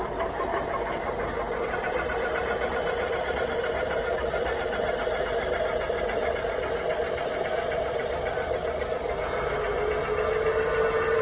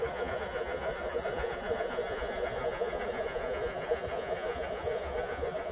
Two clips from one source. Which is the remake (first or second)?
second